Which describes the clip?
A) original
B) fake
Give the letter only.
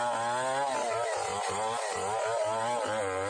A